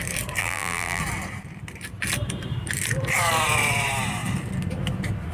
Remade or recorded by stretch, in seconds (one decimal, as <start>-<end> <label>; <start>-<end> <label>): 0.0-0.4 recorded; 0.4-1.0 remade; 1.0-5.3 recorded